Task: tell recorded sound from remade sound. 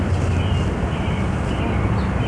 recorded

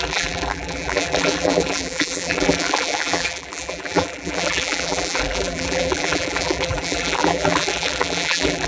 remade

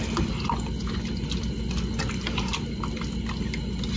recorded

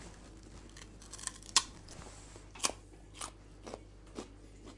recorded